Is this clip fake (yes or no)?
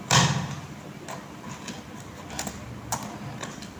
no